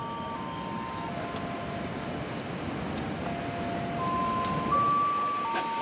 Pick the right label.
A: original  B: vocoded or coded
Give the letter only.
A